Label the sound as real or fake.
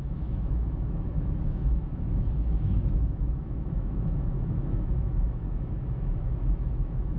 fake